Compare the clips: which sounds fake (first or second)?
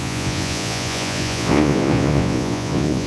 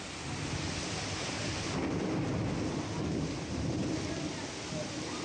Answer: first